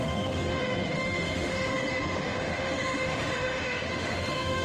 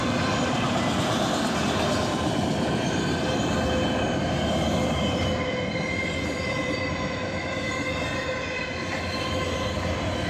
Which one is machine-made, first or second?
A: first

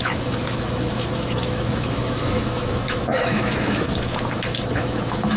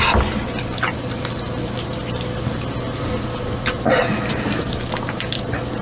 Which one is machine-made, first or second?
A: first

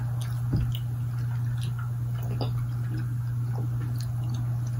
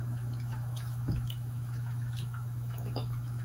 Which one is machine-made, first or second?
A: second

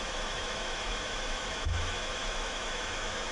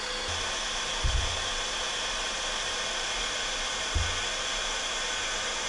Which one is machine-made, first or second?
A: first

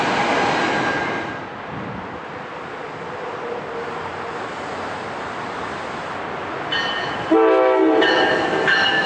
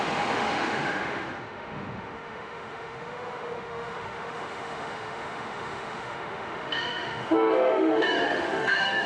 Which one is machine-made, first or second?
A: second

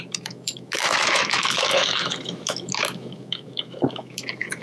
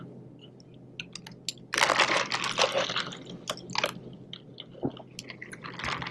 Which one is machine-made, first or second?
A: first